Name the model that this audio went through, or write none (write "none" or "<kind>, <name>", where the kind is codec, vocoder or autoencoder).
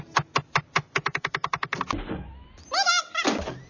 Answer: none